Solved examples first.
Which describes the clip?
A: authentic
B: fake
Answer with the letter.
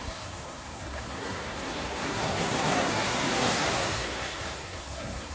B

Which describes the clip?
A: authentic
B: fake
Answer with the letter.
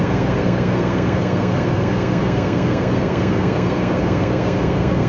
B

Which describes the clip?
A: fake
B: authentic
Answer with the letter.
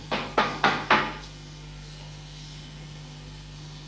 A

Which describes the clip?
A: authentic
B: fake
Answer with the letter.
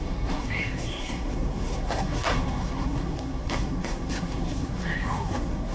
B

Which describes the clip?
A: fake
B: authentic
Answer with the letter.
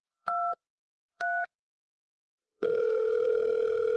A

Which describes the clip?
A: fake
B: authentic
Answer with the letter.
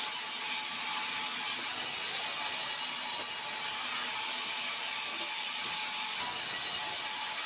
B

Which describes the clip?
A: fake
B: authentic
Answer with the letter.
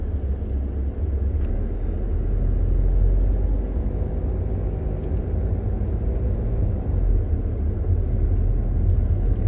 B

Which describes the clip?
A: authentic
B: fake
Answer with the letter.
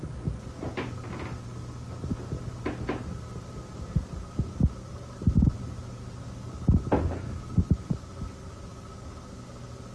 A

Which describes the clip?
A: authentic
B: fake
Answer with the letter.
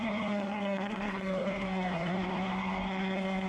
B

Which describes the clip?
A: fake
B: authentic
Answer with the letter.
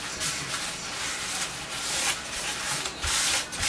B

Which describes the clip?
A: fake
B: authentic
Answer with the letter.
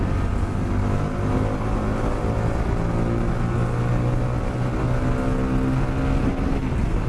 B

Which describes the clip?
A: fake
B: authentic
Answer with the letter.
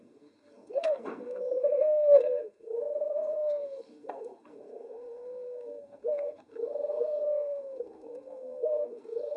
A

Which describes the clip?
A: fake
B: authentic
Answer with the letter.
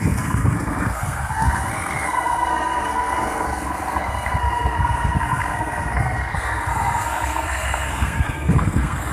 A